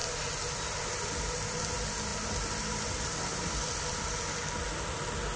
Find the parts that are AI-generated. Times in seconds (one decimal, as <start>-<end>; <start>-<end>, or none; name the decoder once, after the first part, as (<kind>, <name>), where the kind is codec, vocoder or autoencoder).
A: 2.1-3.8 (vocoder, BigVGAN v2)